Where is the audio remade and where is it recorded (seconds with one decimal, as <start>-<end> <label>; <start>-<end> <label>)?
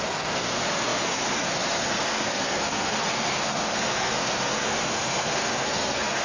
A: 0.0-6.2 remade